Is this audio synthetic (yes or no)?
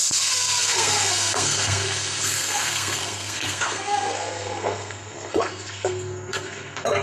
yes